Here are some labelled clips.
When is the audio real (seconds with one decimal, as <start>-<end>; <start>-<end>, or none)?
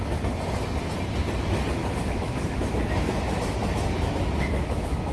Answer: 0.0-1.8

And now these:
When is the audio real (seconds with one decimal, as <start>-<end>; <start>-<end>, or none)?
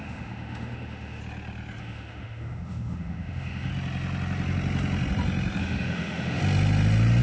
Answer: 1.2-1.8; 3.7-5.6; 6.4-7.2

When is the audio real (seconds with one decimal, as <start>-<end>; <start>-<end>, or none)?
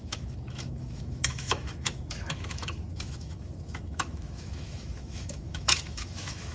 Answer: none